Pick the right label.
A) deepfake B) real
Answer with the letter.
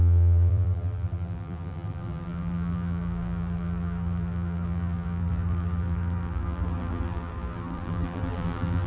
A